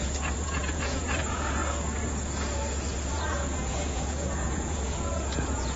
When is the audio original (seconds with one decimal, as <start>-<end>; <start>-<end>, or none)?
1.6-3.1